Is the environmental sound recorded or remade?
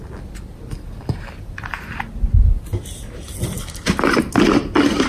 recorded